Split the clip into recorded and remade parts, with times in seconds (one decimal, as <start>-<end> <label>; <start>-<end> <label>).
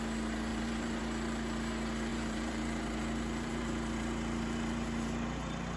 0.0-0.5 recorded; 0.5-1.0 remade; 1.0-2.1 recorded; 2.1-5.8 remade